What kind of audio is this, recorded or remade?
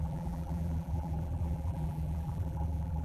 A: remade